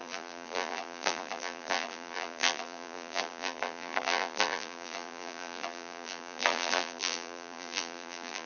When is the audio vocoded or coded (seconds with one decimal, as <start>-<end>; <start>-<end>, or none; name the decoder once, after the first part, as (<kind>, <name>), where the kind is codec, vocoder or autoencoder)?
0.0-8.5 (vocoder, BigVGAN v2)